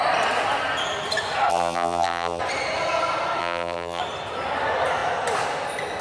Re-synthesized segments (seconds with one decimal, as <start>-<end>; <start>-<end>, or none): 1.5-2.4; 3.4-4.0